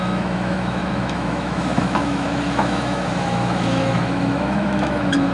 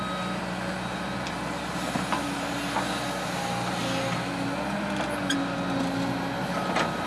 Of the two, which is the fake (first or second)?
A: first